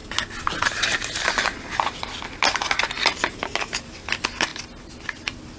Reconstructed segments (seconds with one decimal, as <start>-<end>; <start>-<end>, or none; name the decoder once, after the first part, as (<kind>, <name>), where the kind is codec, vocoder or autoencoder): none